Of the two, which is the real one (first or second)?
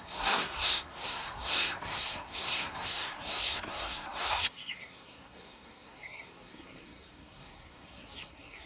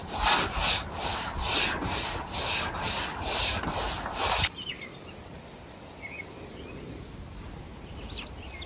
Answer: second